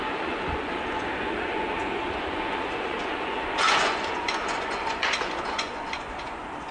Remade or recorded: remade